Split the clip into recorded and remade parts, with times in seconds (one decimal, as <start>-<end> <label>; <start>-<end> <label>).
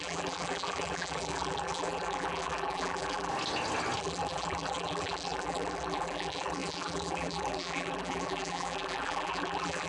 0.0-3.3 remade; 3.3-4.0 recorded; 4.0-9.9 remade